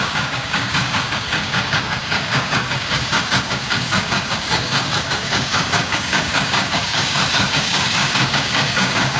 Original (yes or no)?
no